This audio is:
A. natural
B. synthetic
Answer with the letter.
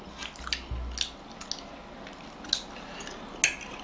A